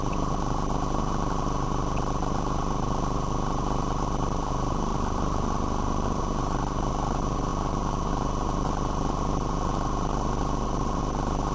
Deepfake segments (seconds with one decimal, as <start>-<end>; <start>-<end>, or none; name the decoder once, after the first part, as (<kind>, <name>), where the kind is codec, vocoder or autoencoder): 4.9-6.2 (vocoder, BigVGAN v2)